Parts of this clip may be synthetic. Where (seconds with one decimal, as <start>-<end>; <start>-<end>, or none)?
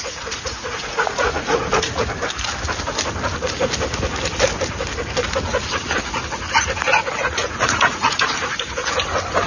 0.0-2.0; 7.1-8.3